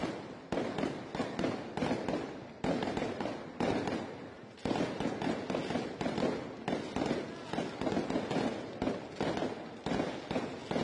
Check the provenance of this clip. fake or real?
real